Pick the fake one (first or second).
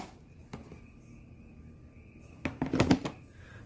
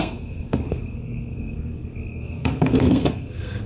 second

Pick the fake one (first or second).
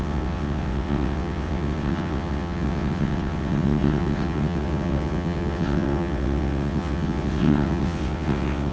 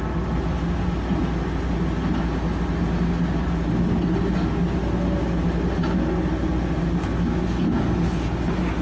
first